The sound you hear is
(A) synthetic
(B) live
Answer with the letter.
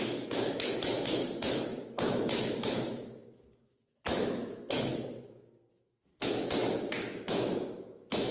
A